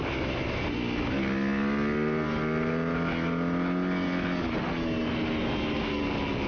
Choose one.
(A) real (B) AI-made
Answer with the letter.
A